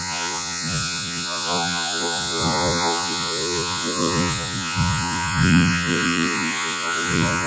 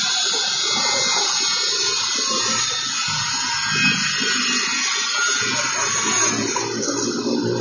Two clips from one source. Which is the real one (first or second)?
second